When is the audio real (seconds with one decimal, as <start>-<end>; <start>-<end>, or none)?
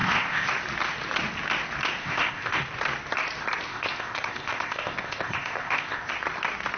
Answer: 0.5-2.0; 2.6-3.7; 6.1-6.8